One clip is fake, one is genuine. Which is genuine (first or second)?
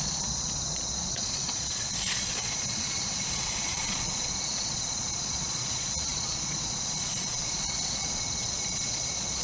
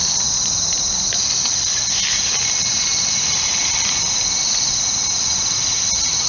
second